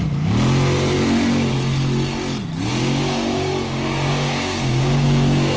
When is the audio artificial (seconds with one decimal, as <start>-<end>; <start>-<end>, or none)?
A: 2.8-5.6